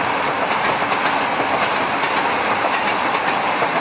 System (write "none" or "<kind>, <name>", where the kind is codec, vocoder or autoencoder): vocoder, BigVGAN v2